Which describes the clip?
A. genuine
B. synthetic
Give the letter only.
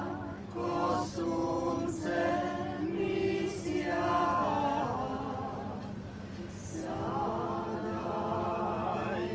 A